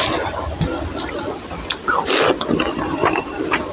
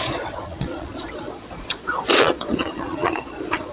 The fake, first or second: second